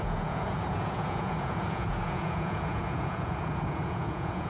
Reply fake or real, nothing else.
fake